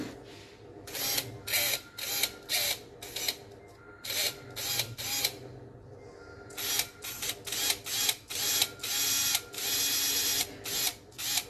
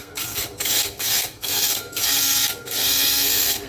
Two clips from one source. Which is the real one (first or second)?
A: first